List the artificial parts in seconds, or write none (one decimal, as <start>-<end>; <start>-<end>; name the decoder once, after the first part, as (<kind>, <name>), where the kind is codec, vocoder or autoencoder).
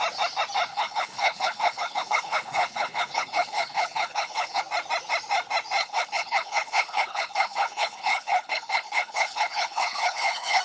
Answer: 0.7-4.6 (codec, HILCodec); 5.8-10.6